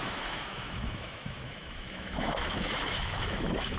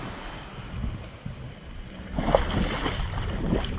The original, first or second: second